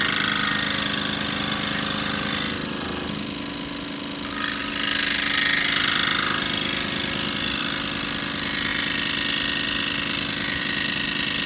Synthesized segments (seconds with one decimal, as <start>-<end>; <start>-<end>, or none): none

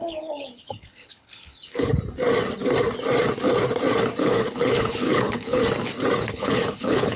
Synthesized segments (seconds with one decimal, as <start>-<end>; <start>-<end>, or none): 0.0-1.9; 4.2-5.6; 6.3-7.2

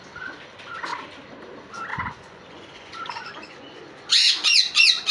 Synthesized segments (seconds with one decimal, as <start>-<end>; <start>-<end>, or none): 1.9-5.1

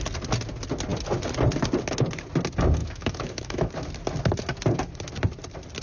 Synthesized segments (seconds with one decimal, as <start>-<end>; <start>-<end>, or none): 2.8-3.7

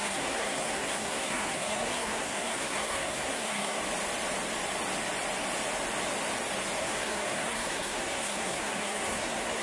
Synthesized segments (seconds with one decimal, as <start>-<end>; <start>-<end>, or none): 0.0-3.8; 6.8-9.6

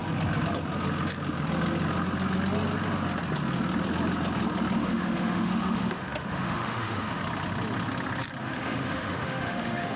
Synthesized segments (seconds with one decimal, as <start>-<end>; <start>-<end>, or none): 4.8-7.2; 8.4-10.0

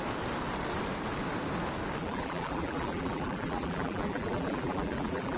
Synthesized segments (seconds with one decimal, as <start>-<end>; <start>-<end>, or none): 2.0-5.4

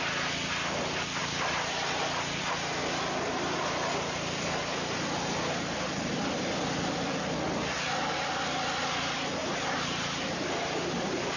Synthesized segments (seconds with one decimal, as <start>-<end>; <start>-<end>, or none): 9.4-11.4